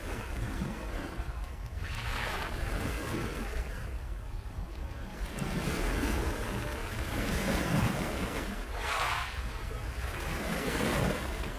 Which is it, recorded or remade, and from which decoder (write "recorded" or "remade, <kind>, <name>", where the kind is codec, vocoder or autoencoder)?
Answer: remade, codec, SNAC